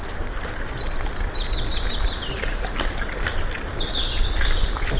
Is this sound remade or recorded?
recorded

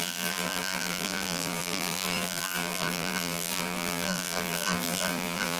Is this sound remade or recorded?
remade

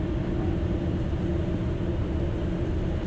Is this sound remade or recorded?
recorded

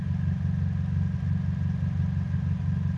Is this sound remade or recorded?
recorded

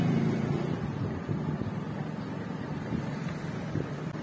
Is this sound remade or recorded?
recorded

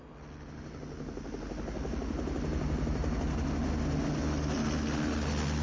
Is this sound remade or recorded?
recorded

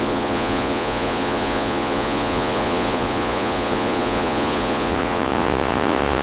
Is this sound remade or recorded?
remade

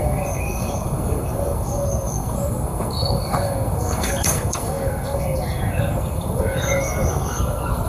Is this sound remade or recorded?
remade